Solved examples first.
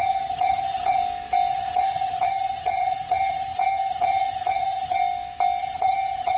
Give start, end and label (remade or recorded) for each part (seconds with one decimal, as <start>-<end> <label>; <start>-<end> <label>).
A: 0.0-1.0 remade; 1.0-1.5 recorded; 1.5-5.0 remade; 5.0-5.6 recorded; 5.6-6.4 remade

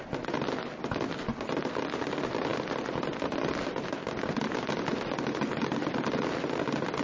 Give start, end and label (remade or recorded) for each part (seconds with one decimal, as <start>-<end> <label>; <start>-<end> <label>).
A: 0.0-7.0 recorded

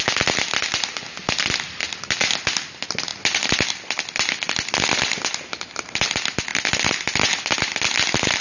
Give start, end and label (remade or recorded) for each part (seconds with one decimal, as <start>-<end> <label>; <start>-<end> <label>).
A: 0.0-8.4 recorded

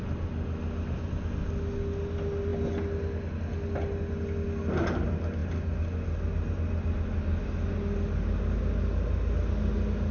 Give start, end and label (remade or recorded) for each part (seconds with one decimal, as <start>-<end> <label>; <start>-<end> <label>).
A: 0.0-10.1 recorded

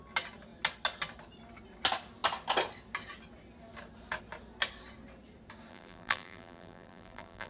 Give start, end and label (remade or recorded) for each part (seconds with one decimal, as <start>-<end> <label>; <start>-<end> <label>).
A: 0.0-5.7 recorded; 5.7-7.5 remade